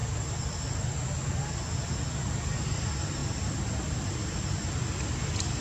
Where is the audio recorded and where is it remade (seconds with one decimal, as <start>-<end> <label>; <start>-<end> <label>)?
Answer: 0.0-5.6 recorded